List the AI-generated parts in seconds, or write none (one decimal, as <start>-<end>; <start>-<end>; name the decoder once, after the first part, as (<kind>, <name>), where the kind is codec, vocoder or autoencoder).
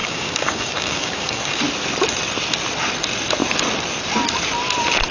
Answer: 0.0-1.6 (codec, DAC)